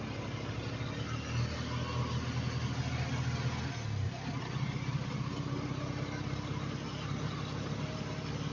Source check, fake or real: real